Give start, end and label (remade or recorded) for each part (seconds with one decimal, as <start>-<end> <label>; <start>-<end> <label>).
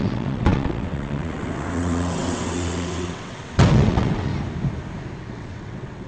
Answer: 0.0-4.3 remade; 4.3-5.3 recorded; 5.3-6.1 remade